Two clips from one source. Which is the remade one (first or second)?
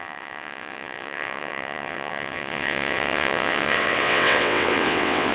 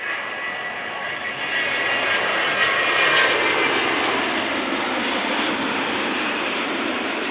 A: first